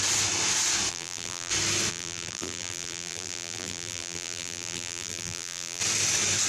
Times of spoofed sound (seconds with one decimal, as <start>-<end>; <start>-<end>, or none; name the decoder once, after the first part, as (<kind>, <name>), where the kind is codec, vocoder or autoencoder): 0.9-1.5 (vocoder, BigVGAN v2); 1.9-5.8